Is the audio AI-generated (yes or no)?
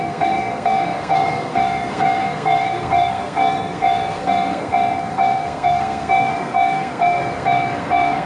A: yes